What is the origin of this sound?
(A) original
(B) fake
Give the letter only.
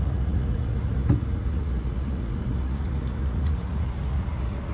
B